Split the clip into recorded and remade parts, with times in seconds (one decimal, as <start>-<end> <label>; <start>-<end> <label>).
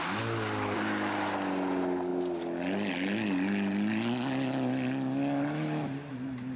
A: 0.0-6.6 recorded